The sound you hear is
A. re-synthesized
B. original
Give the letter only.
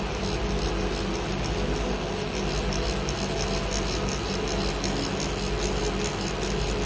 B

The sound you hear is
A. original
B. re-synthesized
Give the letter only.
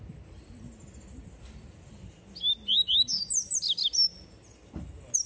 A